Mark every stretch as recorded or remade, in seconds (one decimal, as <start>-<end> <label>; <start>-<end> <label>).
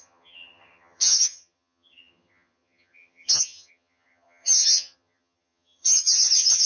0.0-6.7 remade